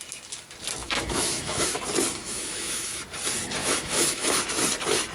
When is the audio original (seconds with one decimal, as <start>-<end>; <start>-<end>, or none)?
0.0-0.8; 1.8-2.2; 3.0-3.6; 4.4-5.1

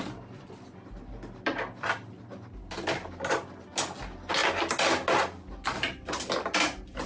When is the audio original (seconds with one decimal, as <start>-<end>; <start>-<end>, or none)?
0.0-7.1

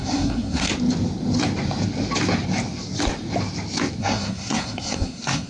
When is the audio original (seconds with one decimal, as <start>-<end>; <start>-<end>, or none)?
0.7-4.0

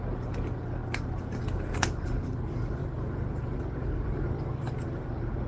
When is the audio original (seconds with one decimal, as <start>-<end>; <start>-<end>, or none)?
0.0-5.5

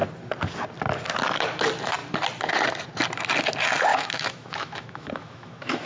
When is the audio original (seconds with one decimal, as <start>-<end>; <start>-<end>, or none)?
0.0-3.9

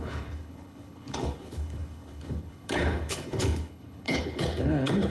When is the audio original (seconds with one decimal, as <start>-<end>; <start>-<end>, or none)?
none

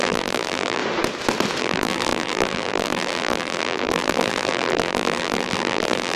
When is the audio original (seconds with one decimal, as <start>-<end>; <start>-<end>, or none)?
0.8-1.6

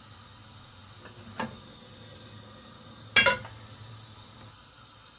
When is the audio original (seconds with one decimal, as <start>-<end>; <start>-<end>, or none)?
0.0-5.2